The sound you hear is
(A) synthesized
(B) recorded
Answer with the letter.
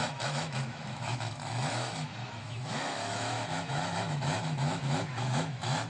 A